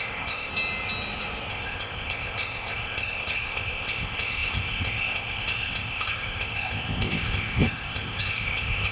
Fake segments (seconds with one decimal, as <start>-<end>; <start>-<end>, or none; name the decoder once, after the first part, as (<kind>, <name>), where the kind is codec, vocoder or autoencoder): 0.0-0.5 (codec, ZipCodec); 1.5-8.9